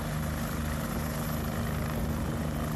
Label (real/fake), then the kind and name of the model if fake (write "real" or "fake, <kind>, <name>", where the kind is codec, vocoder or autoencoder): real